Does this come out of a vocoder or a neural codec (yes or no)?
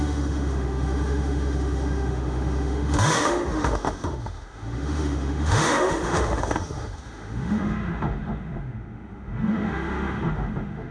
yes